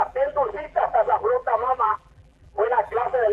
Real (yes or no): no